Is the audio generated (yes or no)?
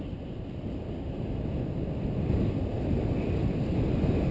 no